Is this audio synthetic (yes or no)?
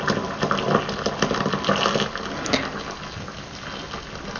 no